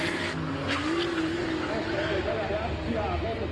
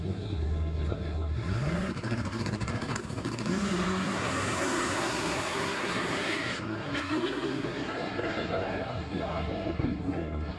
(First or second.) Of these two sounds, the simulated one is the second